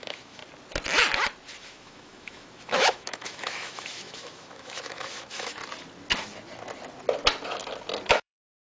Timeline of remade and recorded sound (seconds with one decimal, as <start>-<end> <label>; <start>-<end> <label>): 0.0-0.4 remade; 0.4-1.6 recorded; 1.6-5.6 remade; 5.6-8.1 recorded; 8.1-8.8 remade